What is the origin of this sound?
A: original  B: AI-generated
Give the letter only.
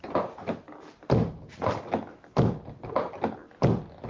A